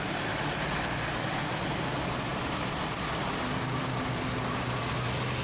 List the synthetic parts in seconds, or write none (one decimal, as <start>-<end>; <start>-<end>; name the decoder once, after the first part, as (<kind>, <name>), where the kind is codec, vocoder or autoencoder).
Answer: none